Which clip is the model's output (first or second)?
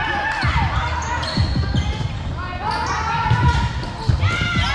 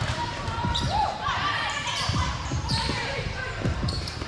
second